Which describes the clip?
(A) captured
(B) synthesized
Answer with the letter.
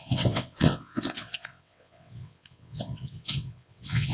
B